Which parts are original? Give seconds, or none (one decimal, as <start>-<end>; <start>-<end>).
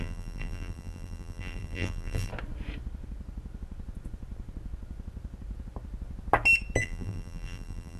2.3-6.8